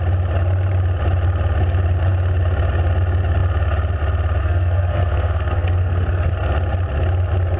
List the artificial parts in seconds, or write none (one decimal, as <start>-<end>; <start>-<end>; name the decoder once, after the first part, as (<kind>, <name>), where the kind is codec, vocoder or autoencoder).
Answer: 4.4-6.3 (codec, SNAC)